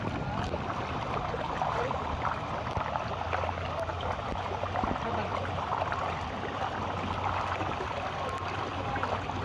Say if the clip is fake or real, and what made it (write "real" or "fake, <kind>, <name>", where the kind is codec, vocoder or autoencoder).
real